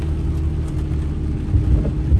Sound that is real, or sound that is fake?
real